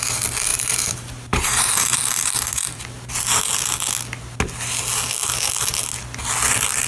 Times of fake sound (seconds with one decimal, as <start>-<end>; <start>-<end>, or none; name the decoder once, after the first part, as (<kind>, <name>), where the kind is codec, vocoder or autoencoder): 0.5-3.1 (vocoder, BigVGAN v2)